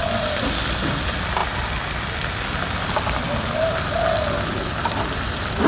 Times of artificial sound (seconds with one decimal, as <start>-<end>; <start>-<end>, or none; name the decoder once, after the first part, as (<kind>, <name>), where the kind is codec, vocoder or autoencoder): none